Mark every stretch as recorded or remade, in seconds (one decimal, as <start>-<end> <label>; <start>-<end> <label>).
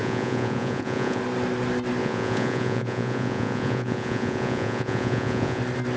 0.0-1.2 remade; 1.2-2.0 recorded; 2.0-5.6 remade; 5.6-6.0 recorded